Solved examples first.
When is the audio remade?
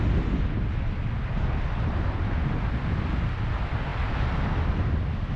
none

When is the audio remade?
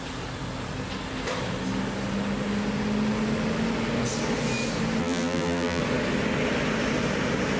5.0-5.8 (vocoder, BigVGAN v2)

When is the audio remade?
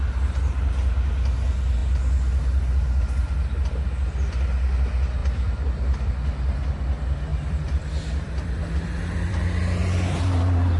5.2-6.1 (vocoder, BigVGAN v2); 7.3-8.6; 9.0-9.6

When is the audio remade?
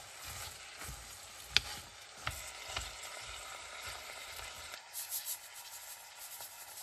3.1-5.3 (vocoder, BigVGAN v2)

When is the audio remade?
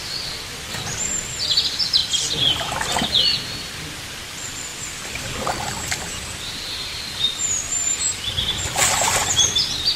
0.0-10.0 (vocoder, BigVGAN v2)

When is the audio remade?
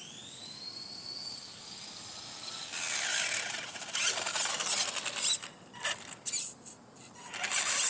3.1-4.5 (vocoder, BigVGAN v2)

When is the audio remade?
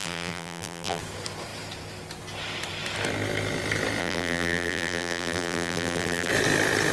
0.0-1.0 (vocoder, BigVGAN v2); 4.0-6.3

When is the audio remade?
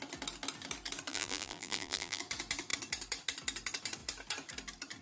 1.1-2.2 (vocoder, BigVGAN v2)